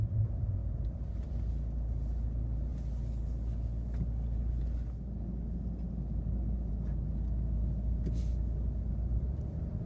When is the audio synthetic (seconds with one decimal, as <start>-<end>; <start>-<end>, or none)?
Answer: 0.6-1.3